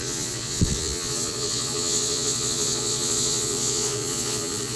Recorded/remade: remade